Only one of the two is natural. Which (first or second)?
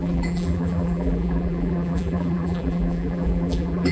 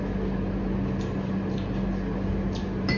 second